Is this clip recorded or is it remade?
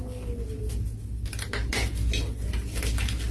recorded